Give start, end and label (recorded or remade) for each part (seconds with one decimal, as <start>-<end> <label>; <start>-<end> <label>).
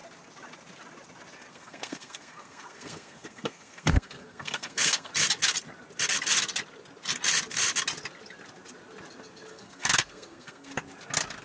0.0-1.5 recorded; 1.5-5.1 remade; 5.1-9.5 recorded; 9.5-10.7 remade; 10.7-11.4 recorded